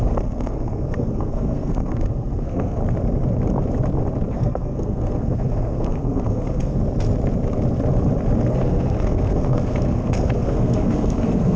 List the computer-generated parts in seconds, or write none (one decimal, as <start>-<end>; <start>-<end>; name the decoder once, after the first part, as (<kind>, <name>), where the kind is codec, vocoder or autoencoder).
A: 0.0-2.8 (codec, SNAC); 4.3-6.8; 8.5-11.6